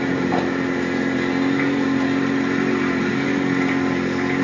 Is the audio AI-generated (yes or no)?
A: no